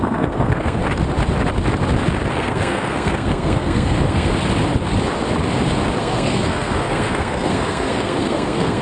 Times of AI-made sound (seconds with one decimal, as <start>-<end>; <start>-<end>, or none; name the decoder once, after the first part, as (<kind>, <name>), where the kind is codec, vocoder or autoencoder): 0.0-0.8 (codec, SNAC); 2.3-4.3; 6.0-8.8